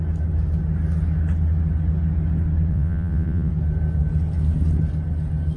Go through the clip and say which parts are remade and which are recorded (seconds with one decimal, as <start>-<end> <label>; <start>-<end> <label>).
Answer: 0.0-2.7 recorded; 2.7-3.5 remade; 3.5-5.6 recorded